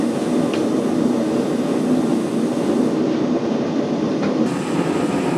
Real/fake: real